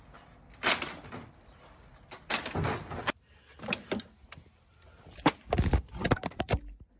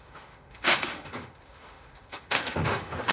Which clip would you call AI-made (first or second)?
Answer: second